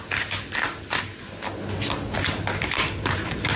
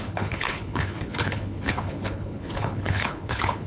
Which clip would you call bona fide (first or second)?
first